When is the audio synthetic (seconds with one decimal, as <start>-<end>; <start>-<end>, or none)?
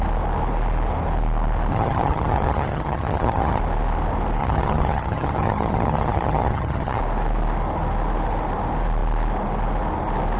1.7-3.6; 4.4-7.0